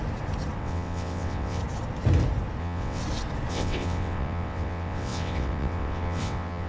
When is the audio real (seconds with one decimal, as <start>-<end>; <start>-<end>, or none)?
0.0-0.6; 1.6-2.6; 3.0-3.5